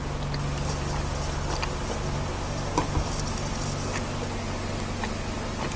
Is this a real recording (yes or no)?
yes